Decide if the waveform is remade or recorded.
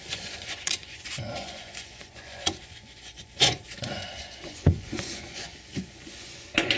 remade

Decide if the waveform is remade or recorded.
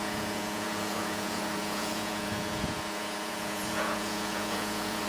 remade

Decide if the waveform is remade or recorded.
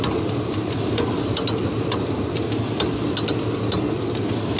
recorded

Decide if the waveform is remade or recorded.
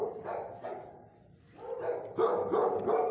recorded